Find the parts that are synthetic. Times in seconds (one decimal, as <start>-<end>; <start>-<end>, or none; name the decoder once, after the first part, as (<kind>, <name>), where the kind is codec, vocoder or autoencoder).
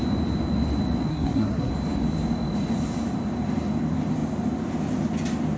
1.1-1.7 (codec, SNAC)